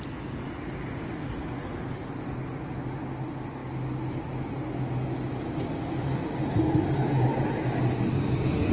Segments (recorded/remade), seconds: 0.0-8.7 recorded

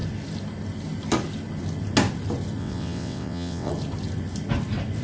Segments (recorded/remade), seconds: 0.0-2.6 recorded; 2.6-3.7 remade; 3.7-5.0 recorded

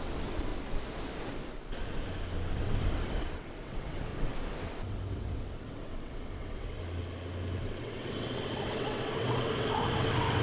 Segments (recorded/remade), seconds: 0.0-0.5 remade; 0.5-2.5 recorded; 2.5-4.1 remade; 4.1-4.6 recorded; 4.6-6.8 remade; 6.8-7.6 recorded; 7.6-10.4 remade